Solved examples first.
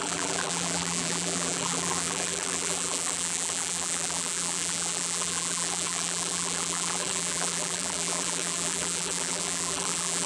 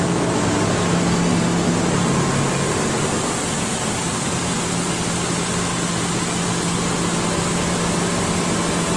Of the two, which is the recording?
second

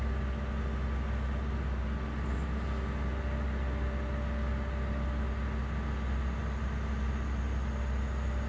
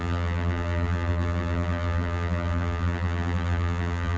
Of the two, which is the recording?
first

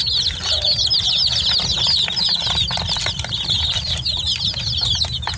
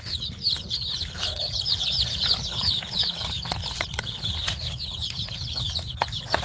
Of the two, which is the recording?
first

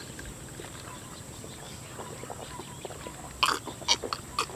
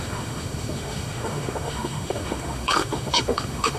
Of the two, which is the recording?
first